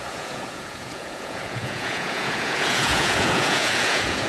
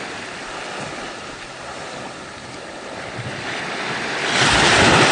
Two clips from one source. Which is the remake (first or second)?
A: first